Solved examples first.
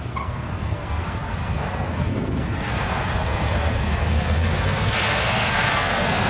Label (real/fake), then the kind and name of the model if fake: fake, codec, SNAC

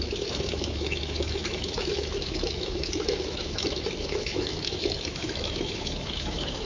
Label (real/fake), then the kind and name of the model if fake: fake, autoencoder, DAC-VAE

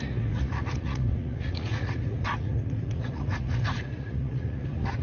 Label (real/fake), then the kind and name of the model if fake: fake, vocoder, Vocos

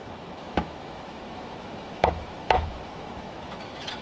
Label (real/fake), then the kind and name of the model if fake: fake, autoencoder, DAC-VAE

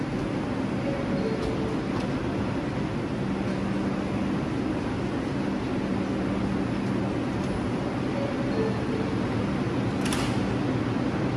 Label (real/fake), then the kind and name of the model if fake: real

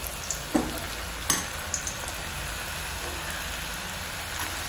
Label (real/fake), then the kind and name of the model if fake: real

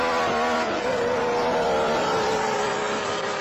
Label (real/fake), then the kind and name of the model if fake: real